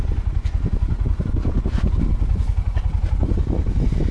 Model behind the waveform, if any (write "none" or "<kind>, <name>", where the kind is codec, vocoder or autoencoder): none